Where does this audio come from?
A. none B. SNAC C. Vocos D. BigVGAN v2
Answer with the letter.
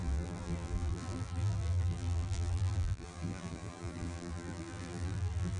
D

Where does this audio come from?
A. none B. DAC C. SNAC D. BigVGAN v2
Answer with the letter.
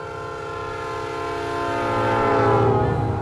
A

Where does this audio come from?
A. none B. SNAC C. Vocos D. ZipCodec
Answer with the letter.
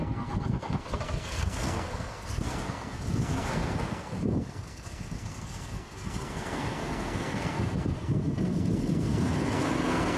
B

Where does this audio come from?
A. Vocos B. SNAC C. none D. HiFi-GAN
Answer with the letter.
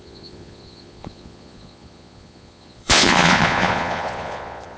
A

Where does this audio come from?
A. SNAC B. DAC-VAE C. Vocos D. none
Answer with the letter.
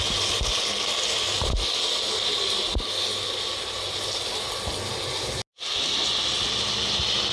D